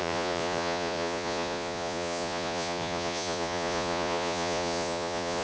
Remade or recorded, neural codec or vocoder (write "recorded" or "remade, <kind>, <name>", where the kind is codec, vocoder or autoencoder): remade, vocoder, Vocos